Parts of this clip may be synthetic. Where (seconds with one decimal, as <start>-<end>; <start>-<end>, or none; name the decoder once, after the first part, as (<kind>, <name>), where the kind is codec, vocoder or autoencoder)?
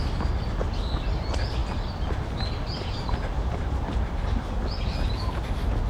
none